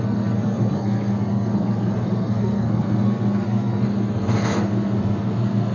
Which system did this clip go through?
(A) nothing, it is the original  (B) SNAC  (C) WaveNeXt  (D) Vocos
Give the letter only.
B